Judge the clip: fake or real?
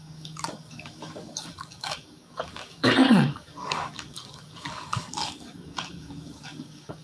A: fake